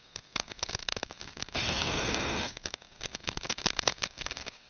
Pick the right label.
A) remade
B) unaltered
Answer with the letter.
A